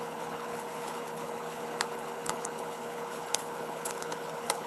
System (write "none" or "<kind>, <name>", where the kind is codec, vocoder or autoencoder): codec, HILCodec